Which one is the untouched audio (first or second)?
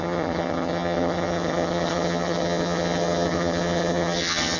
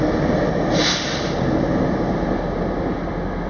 second